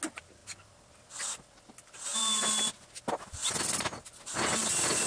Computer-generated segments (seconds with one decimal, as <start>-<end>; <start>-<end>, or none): none